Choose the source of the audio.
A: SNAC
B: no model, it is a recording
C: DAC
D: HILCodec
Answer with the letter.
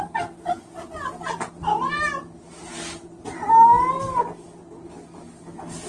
B